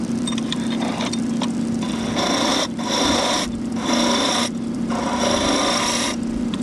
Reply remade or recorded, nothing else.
recorded